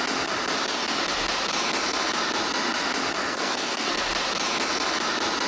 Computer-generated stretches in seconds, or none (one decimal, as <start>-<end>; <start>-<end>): 3.2-4.1